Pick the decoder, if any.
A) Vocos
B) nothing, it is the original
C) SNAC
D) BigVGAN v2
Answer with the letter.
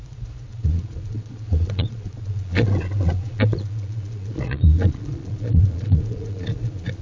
A